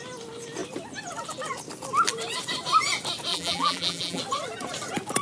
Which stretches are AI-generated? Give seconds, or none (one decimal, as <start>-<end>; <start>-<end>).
3.3-4.2